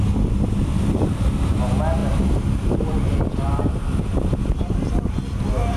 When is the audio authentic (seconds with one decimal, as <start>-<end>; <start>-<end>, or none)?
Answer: 0.0-5.8